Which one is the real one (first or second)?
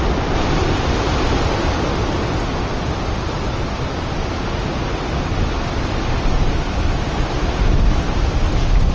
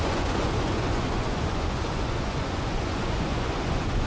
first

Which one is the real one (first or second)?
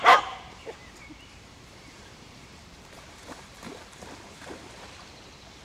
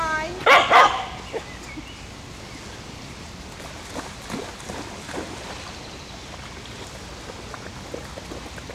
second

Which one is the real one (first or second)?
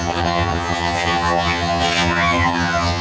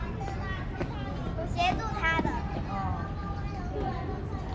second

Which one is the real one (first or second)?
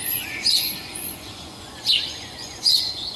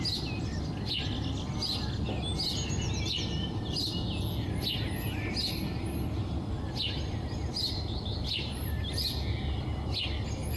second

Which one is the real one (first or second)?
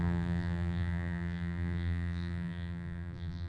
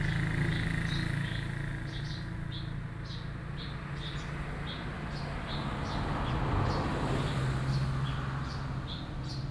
second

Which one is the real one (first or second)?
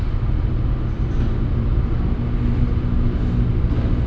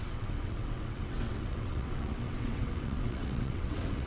first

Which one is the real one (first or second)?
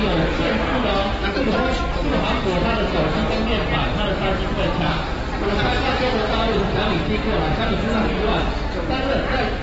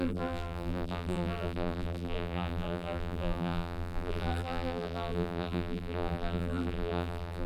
first